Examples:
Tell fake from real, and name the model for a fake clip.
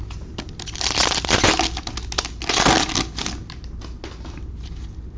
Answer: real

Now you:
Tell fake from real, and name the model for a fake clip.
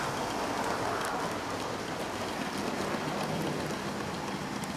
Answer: real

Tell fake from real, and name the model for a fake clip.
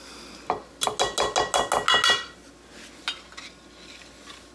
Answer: real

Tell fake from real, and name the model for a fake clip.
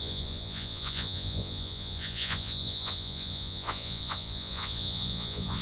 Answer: fake, vocoder, Vocos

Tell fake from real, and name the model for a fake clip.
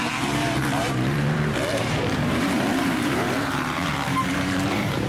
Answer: fake, vocoder, BigVGAN v2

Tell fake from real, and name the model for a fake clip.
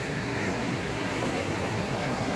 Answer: fake, codec, SNAC